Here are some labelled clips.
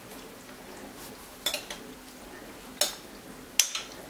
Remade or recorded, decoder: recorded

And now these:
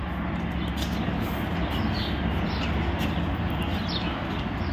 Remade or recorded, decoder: recorded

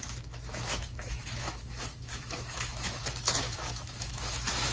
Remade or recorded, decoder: remade, autoencoder, DAC-VAE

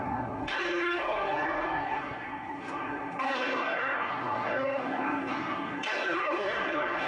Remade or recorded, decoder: remade, codec, SNAC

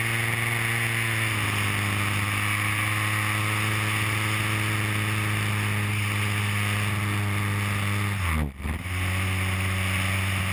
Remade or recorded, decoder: recorded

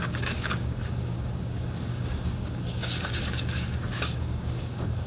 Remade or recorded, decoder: remade, codec, DAC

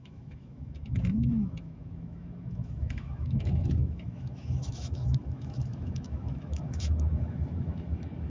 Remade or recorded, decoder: remade, autoencoder, DAC-VAE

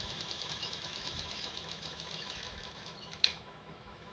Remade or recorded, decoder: remade, autoencoder, DAC-VAE